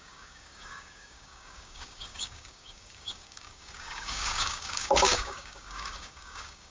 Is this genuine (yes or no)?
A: no